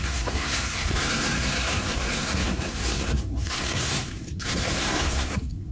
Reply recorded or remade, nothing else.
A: remade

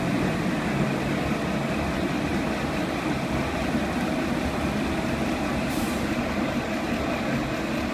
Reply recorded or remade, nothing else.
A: recorded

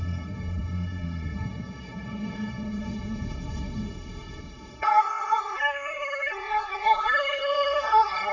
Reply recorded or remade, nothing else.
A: remade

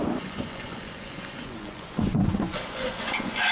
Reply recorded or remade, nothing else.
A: remade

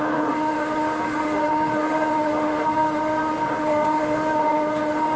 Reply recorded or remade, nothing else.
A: remade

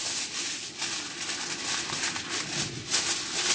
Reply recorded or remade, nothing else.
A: recorded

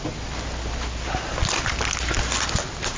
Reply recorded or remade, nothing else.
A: recorded